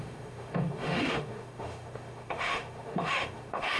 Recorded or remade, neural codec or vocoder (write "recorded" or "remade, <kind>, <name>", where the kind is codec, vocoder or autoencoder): remade, autoencoder, DAC-VAE